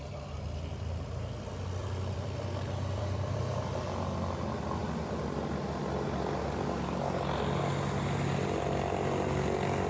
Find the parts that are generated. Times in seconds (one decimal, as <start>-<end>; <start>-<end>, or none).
1.8-3.8